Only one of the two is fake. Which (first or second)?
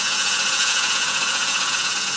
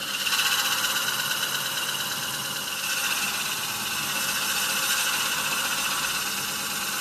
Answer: first